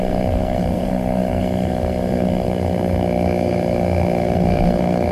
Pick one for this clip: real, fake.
fake